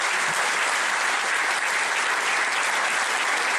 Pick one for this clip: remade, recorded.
recorded